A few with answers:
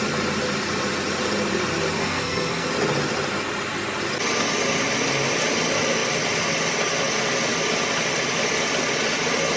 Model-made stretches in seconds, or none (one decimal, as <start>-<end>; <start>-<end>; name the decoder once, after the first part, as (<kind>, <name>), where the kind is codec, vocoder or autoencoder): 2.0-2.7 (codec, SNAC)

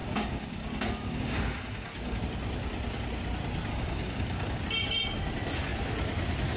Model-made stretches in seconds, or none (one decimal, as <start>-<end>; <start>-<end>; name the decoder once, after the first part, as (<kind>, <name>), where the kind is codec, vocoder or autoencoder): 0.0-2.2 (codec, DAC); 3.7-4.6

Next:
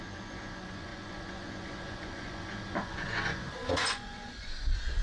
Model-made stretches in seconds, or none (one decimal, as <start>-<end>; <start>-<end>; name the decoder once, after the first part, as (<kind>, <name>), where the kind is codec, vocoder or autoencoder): 0.0-5.0 (vocoder, Vocos)